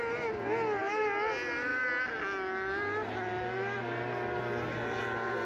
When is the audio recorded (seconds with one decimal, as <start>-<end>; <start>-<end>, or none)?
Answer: 0.0-5.5